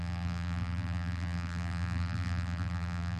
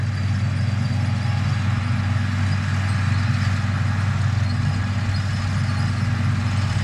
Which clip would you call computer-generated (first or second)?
first